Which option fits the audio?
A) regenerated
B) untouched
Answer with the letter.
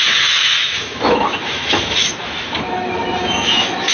A